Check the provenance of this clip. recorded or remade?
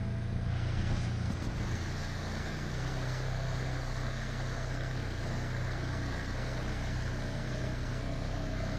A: remade